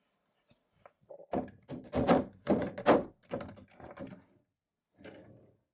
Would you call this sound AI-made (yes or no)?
no